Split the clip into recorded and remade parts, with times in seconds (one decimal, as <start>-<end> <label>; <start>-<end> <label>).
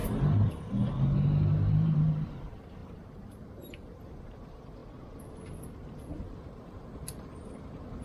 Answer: 0.0-1.7 recorded; 1.7-4.8 remade; 4.8-5.7 recorded; 5.7-8.0 remade